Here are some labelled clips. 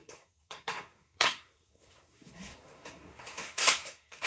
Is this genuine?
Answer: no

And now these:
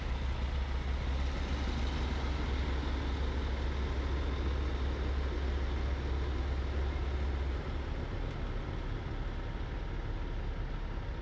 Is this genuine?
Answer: yes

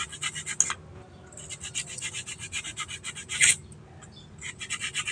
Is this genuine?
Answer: yes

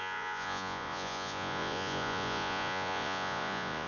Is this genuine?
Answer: no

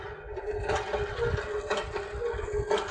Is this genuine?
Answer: yes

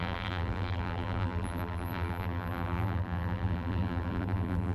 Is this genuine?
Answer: no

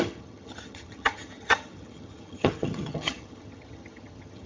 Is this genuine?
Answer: no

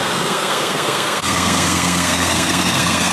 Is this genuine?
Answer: no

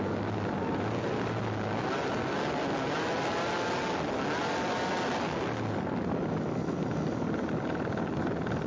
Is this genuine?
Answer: yes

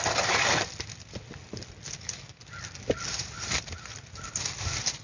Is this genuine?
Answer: yes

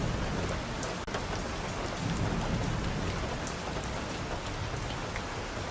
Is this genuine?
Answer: yes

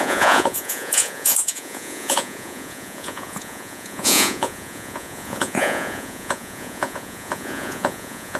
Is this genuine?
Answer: no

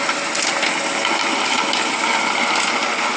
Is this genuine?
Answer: yes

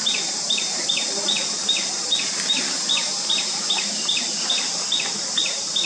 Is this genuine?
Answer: no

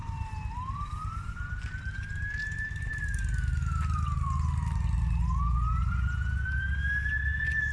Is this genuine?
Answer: yes